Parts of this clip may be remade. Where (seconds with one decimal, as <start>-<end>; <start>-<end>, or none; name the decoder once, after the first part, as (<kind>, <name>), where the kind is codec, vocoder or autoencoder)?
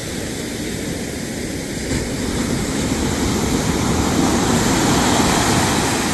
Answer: 0.0-4.3 (vocoder, BigVGAN v2)